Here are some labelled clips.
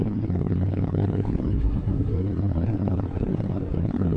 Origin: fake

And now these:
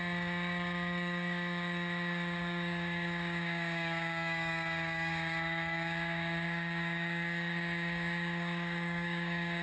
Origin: fake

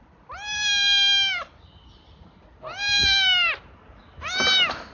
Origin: real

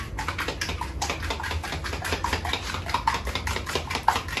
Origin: real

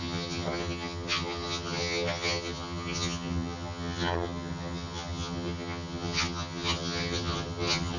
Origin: fake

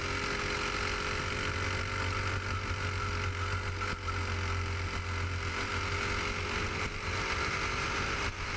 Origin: real